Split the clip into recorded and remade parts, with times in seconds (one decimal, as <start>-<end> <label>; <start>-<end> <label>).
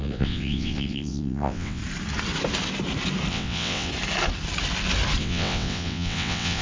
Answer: 0.0-1.8 remade; 1.8-3.3 recorded; 3.3-3.9 remade; 3.9-5.2 recorded; 5.2-6.6 remade